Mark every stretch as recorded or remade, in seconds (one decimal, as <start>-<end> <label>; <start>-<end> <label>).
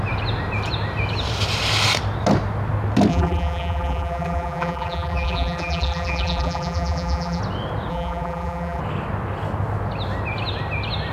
0.0-3.1 recorded; 3.1-7.4 remade; 7.4-7.9 recorded; 7.9-8.8 remade; 8.8-11.1 recorded